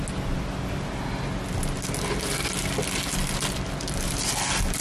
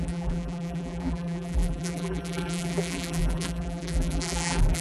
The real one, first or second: first